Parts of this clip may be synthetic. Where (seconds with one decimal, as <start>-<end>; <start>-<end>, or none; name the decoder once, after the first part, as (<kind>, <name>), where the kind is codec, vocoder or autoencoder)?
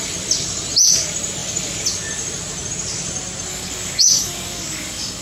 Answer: 3.5-5.2 (codec, DAC)